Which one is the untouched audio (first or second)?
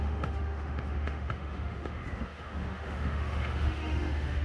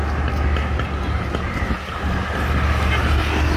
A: second